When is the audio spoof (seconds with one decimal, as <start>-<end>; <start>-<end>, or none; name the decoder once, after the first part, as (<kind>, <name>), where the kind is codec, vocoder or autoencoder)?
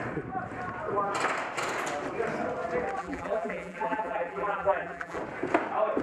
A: 3.0-5.2 (vocoder, BigVGAN v2)